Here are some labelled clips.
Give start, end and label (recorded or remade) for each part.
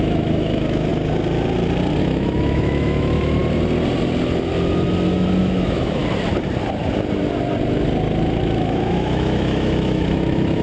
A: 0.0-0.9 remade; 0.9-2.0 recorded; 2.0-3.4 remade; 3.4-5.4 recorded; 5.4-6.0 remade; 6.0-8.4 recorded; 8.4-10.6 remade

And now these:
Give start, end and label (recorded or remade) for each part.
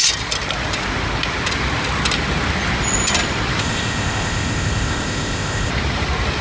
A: 0.0-3.6 recorded; 3.6-5.7 remade; 5.7-6.4 recorded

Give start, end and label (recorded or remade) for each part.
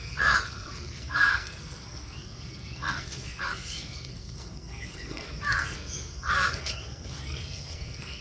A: 0.0-8.2 remade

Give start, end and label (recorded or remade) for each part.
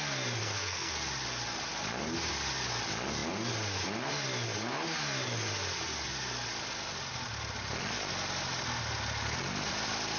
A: 0.0-0.4 recorded; 0.4-0.9 remade; 0.9-10.2 recorded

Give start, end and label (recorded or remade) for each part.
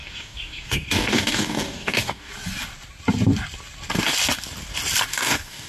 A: 0.0-2.3 remade; 2.3-5.1 recorded; 5.1-5.7 remade